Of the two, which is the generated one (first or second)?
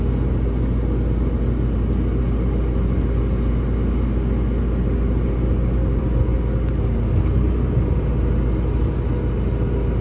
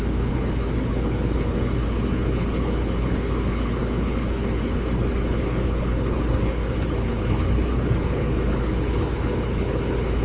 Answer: second